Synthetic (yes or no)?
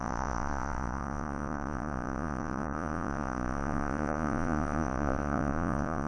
yes